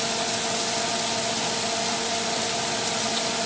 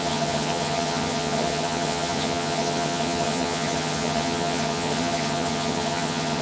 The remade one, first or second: second